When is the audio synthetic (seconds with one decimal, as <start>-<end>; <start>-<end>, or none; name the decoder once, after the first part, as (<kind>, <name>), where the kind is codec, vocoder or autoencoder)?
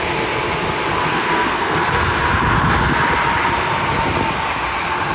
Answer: 1.1-1.9 (codec, SNAC)